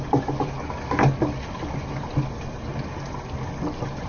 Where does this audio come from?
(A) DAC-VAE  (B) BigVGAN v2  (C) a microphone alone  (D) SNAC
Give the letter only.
C